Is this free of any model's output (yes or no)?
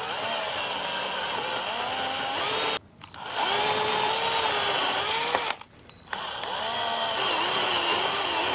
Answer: yes